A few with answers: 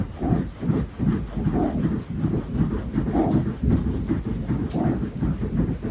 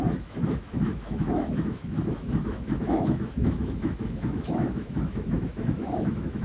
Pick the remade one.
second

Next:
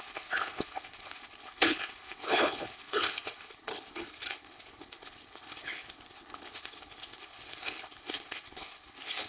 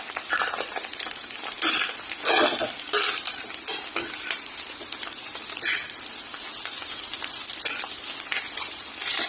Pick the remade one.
first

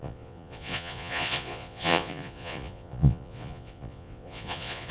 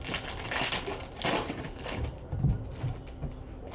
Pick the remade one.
first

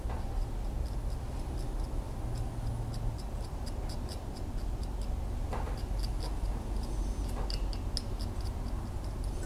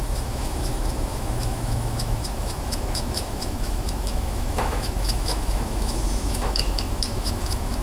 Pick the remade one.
second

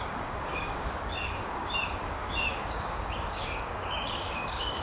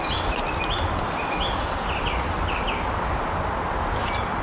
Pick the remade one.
first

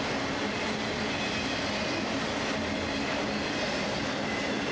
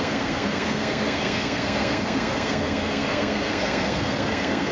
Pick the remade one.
second